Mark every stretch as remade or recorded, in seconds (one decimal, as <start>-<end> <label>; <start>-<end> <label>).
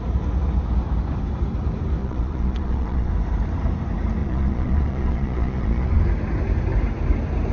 0.0-2.0 recorded; 2.0-3.1 remade; 3.1-4.2 recorded; 4.2-6.0 remade; 6.0-7.5 recorded